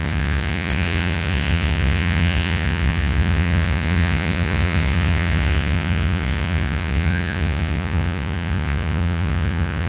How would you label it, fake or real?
fake